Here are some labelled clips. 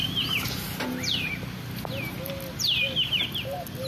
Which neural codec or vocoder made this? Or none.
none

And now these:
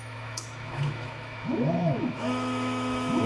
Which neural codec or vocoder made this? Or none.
autoencoder, DAC-VAE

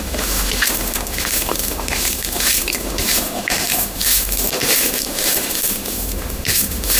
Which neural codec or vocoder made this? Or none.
autoencoder, DAC-VAE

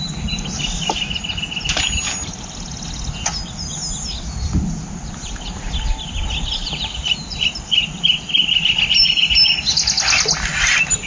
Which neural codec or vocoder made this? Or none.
none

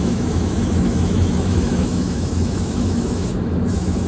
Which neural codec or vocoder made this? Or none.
autoencoder, DAC-VAE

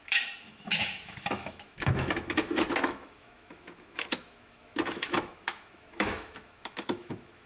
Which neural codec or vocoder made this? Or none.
autoencoder, DAC-VAE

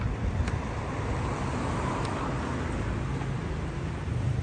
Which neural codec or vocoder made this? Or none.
none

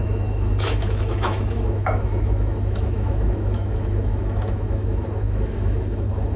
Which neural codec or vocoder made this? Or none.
autoencoder, DAC-VAE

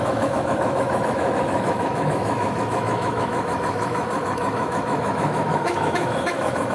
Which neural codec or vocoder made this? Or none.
autoencoder, DAC-VAE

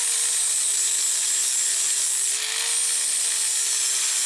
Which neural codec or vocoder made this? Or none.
none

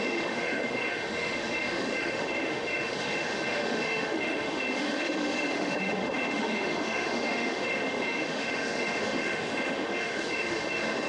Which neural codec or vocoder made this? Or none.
autoencoder, DAC-VAE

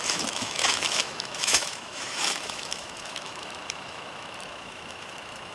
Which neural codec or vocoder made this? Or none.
autoencoder, DAC-VAE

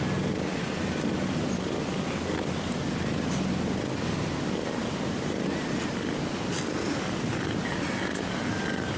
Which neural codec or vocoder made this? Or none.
none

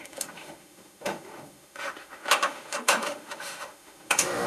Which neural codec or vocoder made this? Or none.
autoencoder, DAC-VAE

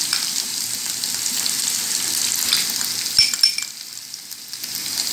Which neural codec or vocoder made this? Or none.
none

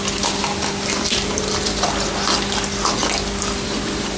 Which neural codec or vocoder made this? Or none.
none